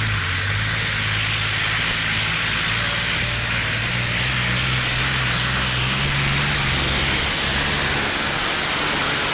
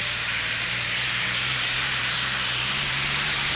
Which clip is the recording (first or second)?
first